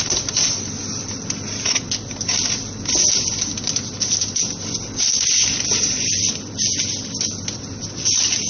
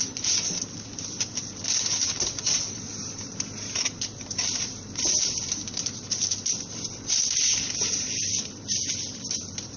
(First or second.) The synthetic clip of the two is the second